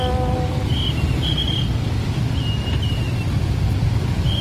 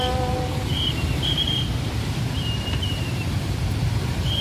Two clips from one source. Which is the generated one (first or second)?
second